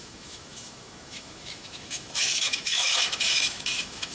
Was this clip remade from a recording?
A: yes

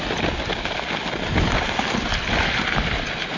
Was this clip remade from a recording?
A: no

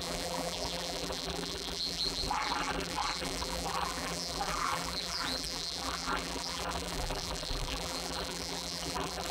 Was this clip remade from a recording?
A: yes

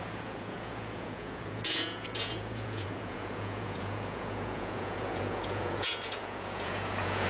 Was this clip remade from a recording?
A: yes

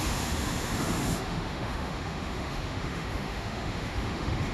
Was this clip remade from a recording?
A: yes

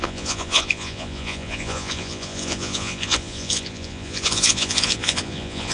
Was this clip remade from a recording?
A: yes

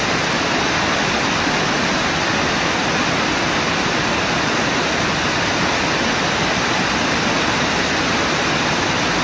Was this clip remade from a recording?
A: no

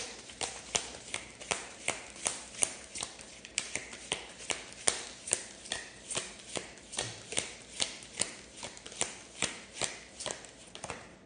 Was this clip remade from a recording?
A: yes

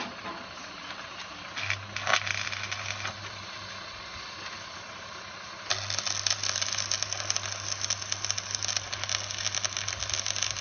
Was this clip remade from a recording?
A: no